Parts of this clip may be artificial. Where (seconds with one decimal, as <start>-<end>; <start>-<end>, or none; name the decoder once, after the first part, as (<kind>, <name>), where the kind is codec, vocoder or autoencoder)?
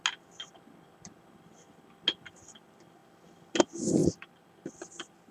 4.0-5.3 (vocoder, BigVGAN v2)